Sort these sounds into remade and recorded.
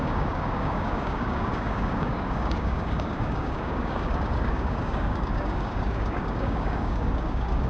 remade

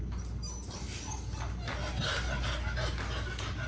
recorded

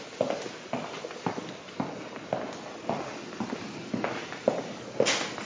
recorded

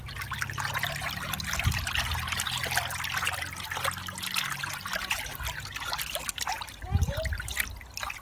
recorded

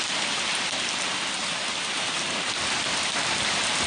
recorded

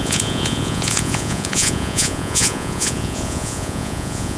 remade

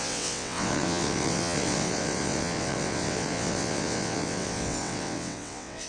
remade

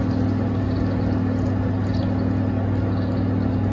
recorded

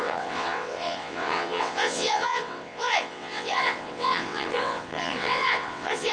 remade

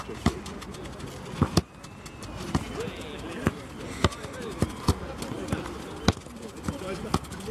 recorded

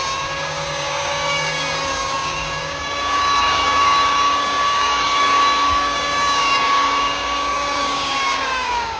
remade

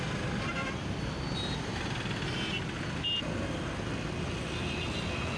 recorded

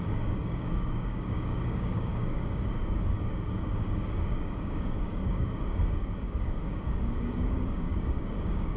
remade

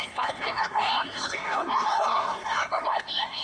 remade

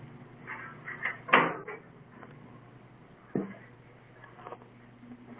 recorded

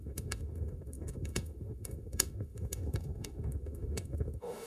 remade